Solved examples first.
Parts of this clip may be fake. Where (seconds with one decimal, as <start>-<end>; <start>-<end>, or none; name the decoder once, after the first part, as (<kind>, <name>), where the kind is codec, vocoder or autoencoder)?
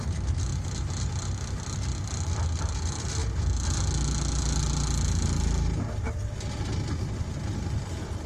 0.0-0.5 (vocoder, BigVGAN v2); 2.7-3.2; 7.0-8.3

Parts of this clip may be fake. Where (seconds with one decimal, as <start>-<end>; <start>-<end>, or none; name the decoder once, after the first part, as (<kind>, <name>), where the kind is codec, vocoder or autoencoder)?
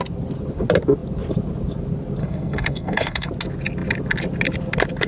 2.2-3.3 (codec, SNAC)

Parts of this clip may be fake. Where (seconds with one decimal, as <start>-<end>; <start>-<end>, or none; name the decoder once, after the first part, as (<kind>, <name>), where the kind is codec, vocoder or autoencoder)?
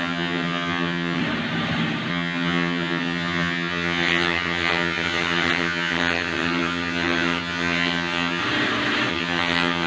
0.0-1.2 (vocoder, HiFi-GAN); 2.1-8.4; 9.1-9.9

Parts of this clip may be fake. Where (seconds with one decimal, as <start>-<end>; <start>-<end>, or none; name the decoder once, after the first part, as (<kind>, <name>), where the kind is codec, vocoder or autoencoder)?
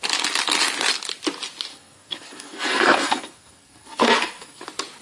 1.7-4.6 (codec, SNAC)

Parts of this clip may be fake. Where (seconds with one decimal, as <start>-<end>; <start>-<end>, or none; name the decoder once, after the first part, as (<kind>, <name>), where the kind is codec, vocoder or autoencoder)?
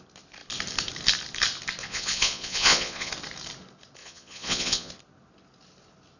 1.8-3.1 (vocoder, Vocos); 4.0-4.9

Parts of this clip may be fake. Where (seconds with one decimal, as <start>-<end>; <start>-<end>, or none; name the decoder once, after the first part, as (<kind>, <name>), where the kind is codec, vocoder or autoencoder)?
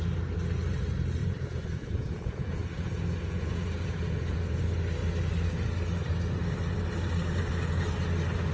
1.2-4.6 (vocoder, Vocos)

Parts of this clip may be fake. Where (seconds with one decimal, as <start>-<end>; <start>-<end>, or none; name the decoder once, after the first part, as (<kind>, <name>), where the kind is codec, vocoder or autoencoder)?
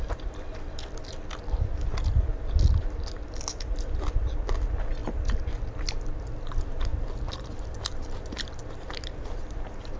none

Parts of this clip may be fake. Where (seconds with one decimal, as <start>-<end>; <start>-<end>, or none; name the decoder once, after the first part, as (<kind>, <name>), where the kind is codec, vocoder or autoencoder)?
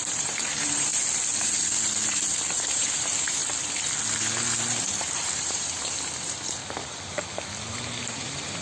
0.0-0.9 (vocoder, BigVGAN v2); 2.6-3.4; 5.0-6.6; 7.6-8.6